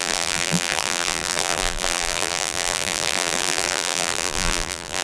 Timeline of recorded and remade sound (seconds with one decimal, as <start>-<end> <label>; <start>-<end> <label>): 0.0-5.0 remade

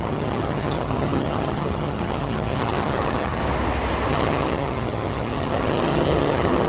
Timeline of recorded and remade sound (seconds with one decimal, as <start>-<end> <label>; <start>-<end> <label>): 0.0-3.4 remade; 3.4-4.1 recorded; 4.1-6.7 remade

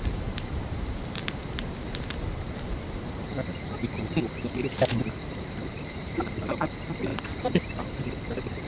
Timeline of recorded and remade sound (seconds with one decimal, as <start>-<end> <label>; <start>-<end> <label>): 0.0-8.7 remade

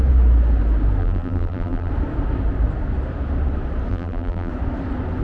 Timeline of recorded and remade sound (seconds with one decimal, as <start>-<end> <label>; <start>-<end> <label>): 0.0-1.0 recorded; 1.0-1.9 remade; 1.9-3.9 recorded; 3.9-4.5 remade; 4.5-5.2 recorded

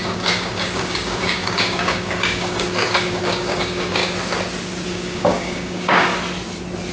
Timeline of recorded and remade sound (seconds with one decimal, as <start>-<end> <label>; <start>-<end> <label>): 0.0-4.0 remade; 4.0-4.9 recorded; 4.9-6.1 remade; 6.1-6.9 recorded

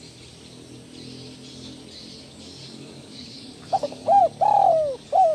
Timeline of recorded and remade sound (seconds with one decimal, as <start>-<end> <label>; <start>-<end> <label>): 0.0-2.6 recorded; 2.6-4.2 remade; 4.2-5.3 recorded

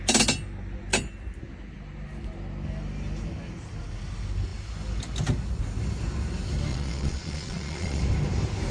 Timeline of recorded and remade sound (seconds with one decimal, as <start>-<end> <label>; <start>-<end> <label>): 0.0-6.7 recorded; 6.7-8.0 remade; 8.0-8.7 recorded

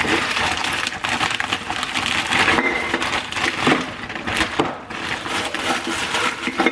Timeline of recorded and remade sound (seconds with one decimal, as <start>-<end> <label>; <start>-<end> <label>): 0.0-0.6 recorded; 0.6-4.6 remade; 4.6-6.7 recorded